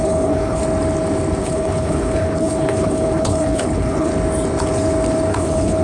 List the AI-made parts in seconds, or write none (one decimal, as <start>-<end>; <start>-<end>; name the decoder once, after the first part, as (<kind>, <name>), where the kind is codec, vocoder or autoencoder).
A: 0.0-0.6 (codec, HILCodec); 1.4-4.1; 5.3-5.8